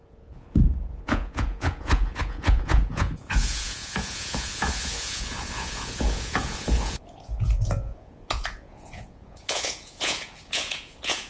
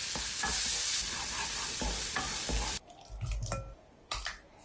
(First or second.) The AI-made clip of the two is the first